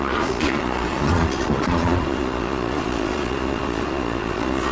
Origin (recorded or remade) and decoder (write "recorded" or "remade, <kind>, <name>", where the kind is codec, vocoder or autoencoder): remade, vocoder, Vocos